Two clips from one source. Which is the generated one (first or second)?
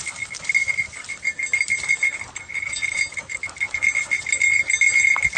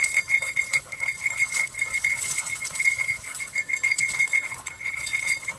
second